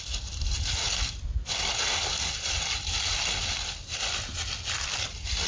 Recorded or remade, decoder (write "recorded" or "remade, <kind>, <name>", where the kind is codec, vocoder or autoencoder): recorded